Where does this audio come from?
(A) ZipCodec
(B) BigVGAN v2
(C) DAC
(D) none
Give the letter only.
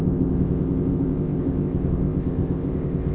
A